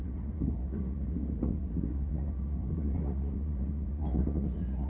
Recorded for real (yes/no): no